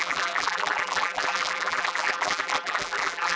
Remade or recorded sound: remade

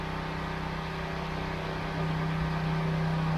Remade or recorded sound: recorded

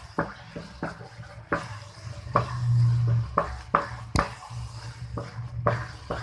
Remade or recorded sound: recorded